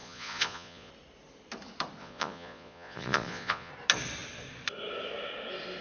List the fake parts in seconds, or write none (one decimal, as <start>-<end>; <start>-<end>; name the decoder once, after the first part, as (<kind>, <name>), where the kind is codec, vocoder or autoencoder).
0.0-0.9 (vocoder, Vocos); 2.0-3.7